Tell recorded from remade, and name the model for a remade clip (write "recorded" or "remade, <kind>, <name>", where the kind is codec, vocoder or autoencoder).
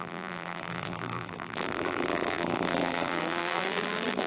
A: remade, vocoder, BigVGAN v2